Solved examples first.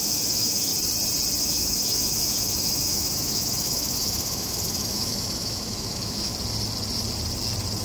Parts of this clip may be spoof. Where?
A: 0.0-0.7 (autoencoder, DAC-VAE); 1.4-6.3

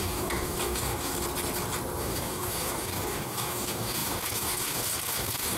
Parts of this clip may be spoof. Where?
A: 0.0-1.1 (codec, DAC); 2.0-5.6

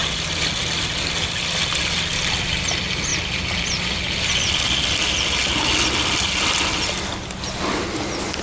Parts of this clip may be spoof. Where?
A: none

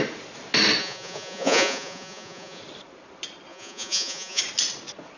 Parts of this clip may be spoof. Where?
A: 0.8-2.6 (vocoder, Vocos); 3.5-4.4

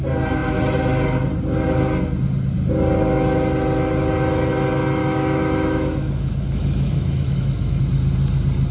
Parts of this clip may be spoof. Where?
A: 5.0-7.8 (autoencoder, DAC-VAE)

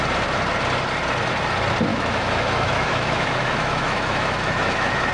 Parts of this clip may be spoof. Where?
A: 1.9-5.1 (autoencoder, DAC-VAE)

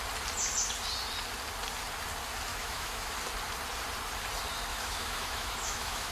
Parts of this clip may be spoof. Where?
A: 2.5-3.1 (autoencoder, DAC-VAE); 4.7-6.1